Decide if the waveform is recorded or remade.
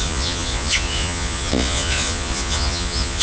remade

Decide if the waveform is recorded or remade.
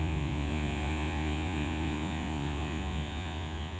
remade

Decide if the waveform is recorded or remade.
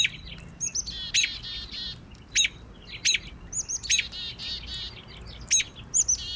recorded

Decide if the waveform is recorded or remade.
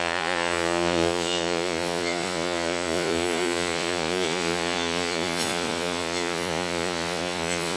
remade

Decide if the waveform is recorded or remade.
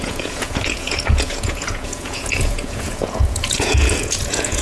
remade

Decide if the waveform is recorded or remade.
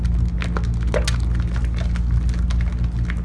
recorded